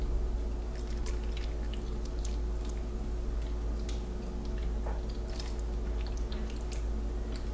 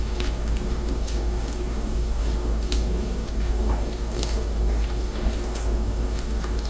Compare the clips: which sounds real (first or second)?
first